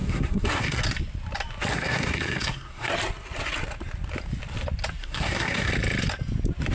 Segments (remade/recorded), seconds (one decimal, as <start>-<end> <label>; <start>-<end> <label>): 0.0-0.8 remade; 0.8-1.7 recorded; 1.7-2.9 remade; 2.9-5.0 recorded; 5.0-5.7 remade; 5.7-6.7 recorded